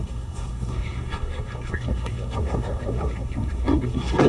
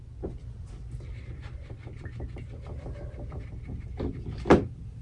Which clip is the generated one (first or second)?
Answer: first